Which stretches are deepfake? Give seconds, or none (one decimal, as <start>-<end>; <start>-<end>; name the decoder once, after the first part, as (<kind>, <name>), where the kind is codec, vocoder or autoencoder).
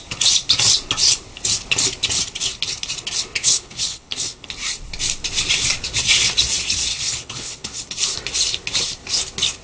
3.4-4.5 (codec, HILCodec); 6.9-7.8